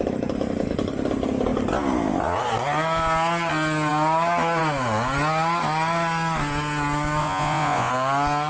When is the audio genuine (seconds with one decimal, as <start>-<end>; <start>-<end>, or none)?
0.0-7.2; 7.9-8.5